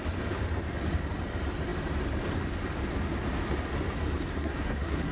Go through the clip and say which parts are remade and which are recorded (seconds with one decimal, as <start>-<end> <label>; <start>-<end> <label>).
0.0-4.3 recorded; 4.3-5.1 remade